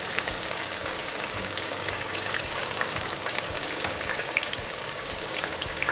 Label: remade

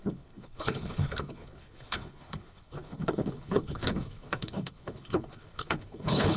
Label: remade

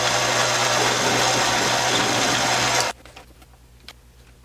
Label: recorded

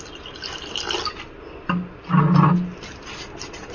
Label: recorded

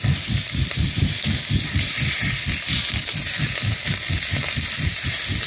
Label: recorded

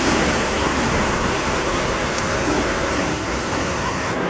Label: remade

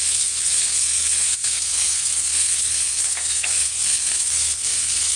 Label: remade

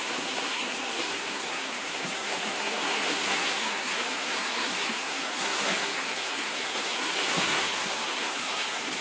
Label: remade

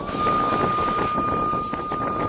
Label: recorded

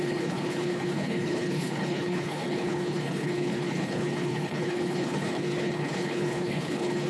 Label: remade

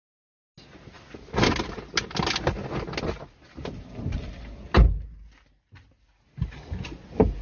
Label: recorded